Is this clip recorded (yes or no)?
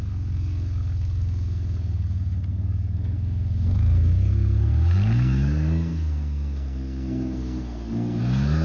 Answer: no